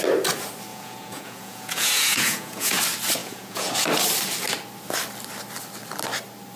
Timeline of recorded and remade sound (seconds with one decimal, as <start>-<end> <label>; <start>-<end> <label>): 0.0-0.7 recorded; 0.7-2.8 remade; 2.8-3.2 recorded; 3.2-3.7 remade; 3.7-6.6 recorded